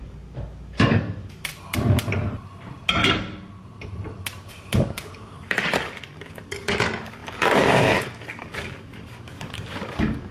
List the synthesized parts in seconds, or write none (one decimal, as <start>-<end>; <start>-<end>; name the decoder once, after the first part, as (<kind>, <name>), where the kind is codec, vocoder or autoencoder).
0.0-1.5 (codec, DAC); 4.5-10.3